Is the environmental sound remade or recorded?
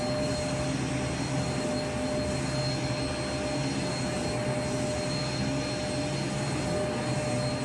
recorded